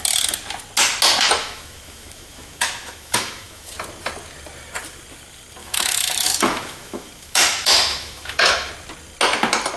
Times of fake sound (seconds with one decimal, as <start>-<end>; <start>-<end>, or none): 1.4-3.7; 5.6-8.7